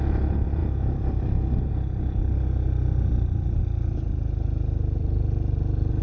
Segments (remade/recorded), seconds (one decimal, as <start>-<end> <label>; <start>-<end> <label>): 0.0-6.0 recorded